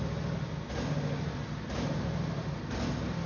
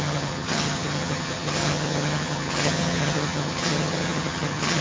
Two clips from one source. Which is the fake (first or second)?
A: second